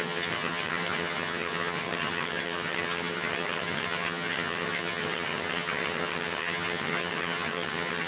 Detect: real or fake fake